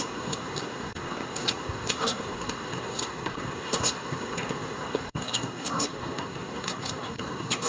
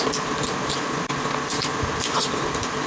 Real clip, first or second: second